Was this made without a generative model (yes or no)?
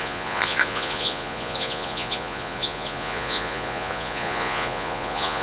no